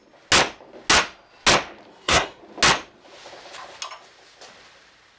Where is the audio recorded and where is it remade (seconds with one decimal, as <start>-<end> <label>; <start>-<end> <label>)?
0.0-1.9 recorded; 1.9-2.4 remade; 2.4-5.2 recorded